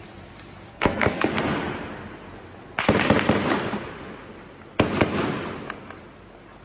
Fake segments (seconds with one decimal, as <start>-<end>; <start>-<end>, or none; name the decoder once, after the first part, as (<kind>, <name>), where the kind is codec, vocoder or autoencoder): 0.7-1.3 (codec, SNAC)